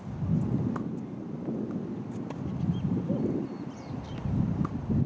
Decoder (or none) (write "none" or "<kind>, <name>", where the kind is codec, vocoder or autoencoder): none